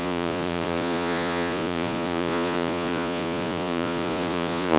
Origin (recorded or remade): remade